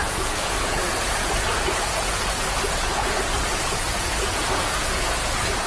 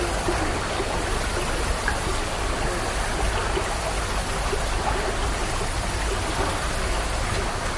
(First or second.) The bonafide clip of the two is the second